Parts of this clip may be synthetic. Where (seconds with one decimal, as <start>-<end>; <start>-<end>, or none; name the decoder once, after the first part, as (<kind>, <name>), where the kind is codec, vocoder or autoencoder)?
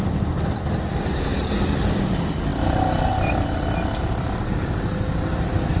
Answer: none